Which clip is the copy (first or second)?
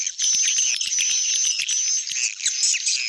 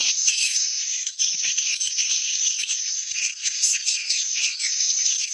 second